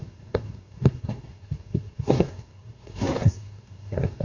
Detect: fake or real fake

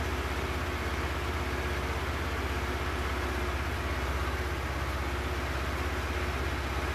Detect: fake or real real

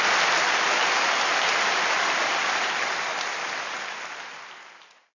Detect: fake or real real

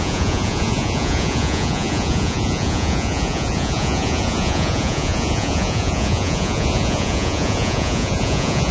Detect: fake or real fake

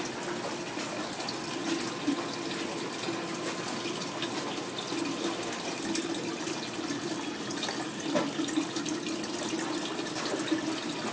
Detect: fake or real real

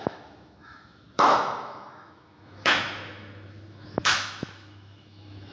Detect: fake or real fake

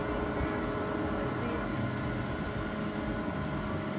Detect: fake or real real